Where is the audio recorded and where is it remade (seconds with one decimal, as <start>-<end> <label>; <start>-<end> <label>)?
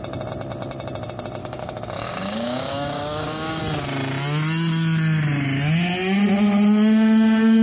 0.0-1.4 recorded; 1.4-3.6 remade; 3.6-7.6 recorded